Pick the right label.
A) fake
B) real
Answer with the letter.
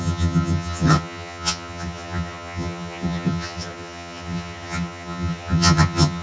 A